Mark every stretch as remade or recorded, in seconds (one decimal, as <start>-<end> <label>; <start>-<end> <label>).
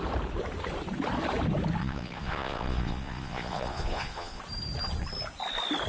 0.0-1.8 recorded; 1.8-4.4 remade; 4.4-5.9 recorded